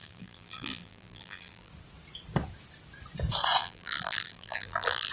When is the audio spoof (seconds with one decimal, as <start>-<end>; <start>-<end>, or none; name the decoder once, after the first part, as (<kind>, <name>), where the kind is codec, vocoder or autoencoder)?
0.0-1.7 (vocoder, BigVGAN v2); 3.6-5.1